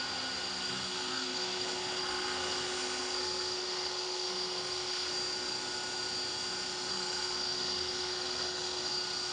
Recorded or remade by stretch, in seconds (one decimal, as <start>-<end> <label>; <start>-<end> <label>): 0.0-0.7 recorded; 0.7-5.1 remade; 5.1-6.9 recorded; 6.9-8.9 remade; 8.9-9.3 recorded